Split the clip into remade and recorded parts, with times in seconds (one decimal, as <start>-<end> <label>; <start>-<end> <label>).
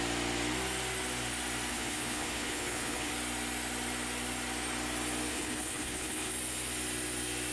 0.0-1.7 recorded; 1.7-3.1 remade; 3.1-5.3 recorded; 5.3-6.3 remade; 6.3-7.5 recorded